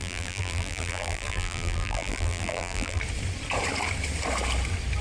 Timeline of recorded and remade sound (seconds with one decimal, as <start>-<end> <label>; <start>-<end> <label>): 0.0-3.0 remade; 3.0-5.0 recorded